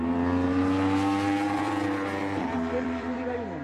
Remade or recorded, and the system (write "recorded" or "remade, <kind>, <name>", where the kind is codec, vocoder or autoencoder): remade, vocoder, BigVGAN v2